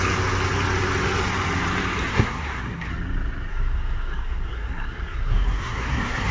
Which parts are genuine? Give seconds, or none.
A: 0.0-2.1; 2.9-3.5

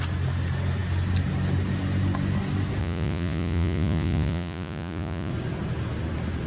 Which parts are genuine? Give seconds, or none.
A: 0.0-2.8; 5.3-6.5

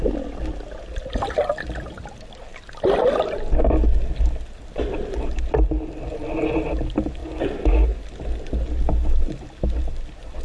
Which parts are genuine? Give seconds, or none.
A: 0.0-10.4

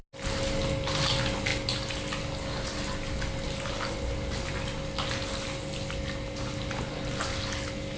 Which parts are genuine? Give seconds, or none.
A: 0.0-8.0

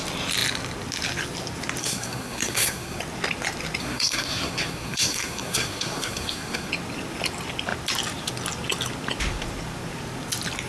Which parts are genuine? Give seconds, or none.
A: 0.0-1.8; 3.0-3.8; 6.7-10.7

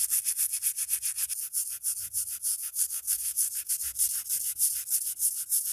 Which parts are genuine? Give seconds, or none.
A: 0.0-2.5; 3.7-5.7